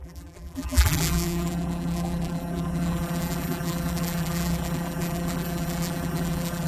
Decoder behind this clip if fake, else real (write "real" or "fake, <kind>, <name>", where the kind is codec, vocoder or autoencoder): fake, vocoder, BigVGAN v2